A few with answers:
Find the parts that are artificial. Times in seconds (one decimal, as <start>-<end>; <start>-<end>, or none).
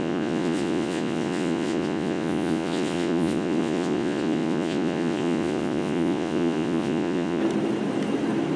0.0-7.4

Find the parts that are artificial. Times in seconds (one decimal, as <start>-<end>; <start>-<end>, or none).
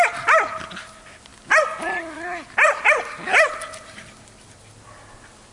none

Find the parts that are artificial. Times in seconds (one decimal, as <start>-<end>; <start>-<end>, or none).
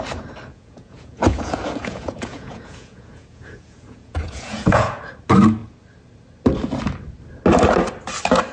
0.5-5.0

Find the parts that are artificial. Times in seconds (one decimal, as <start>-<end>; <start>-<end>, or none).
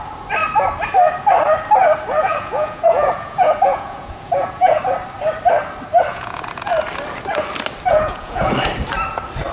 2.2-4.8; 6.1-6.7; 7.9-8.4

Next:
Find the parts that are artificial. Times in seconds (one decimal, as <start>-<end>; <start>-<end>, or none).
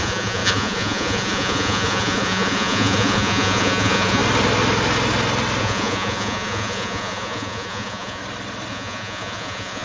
0.0-4.2; 5.6-8.2; 8.7-9.8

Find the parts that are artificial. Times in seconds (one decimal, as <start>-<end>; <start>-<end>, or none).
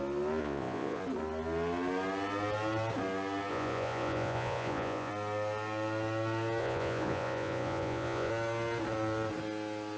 0.4-1.0; 3.5-5.1; 6.6-8.3